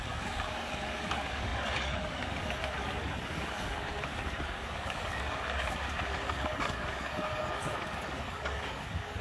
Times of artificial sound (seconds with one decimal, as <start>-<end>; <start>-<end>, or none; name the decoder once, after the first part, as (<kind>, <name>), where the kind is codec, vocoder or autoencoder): 0.0-9.2 (codec, DAC)